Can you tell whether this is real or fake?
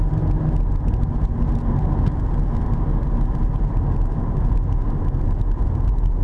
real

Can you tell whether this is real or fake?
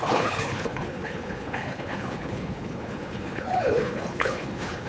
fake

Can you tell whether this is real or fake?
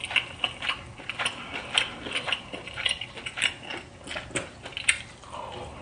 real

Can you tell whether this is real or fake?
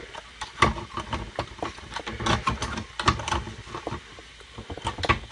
real